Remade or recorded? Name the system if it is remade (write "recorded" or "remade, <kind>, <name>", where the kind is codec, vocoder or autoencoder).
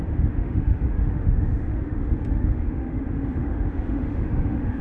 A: remade, autoencoder, DAC-VAE